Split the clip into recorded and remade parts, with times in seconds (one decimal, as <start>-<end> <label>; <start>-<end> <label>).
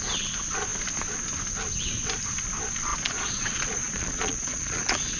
0.0-2.9 recorded; 2.9-5.2 remade